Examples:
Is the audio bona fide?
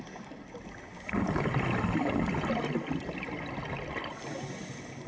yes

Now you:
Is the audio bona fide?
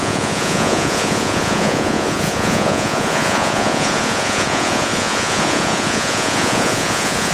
no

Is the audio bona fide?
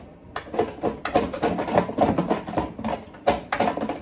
yes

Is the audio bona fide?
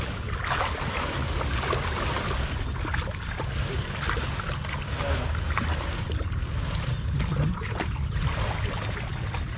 yes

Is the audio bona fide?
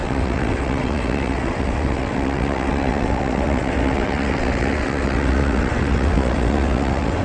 no